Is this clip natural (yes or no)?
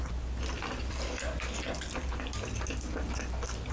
yes